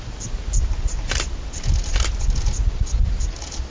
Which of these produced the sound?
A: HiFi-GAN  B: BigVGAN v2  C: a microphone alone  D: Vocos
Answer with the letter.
C